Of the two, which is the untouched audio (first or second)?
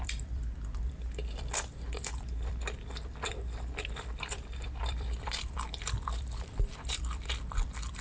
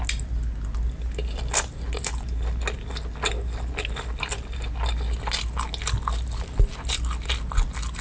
second